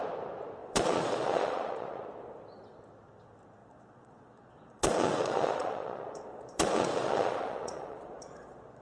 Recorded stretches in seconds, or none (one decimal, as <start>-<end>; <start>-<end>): 0.0-0.6; 2.1-3.6